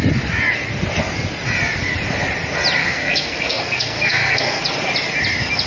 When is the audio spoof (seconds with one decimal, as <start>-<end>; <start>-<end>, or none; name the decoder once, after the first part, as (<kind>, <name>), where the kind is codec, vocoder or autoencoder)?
2.8-4.6 (codec, SNAC)